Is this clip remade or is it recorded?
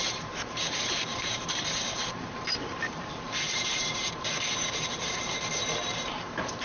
remade